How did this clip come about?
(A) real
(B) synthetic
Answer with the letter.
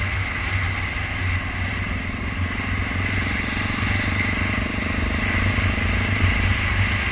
A